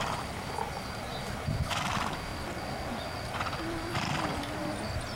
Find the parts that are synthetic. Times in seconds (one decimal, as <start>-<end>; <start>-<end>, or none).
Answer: 0.0-2.3; 3.6-5.2